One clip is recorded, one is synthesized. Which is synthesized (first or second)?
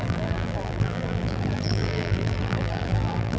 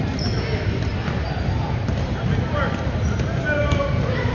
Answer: first